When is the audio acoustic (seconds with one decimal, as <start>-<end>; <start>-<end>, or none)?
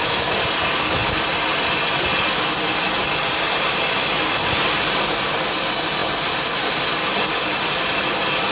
0.0-1.0; 4.8-6.0; 7.0-8.5